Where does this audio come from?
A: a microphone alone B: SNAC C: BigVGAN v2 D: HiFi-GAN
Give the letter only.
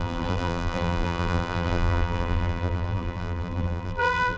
C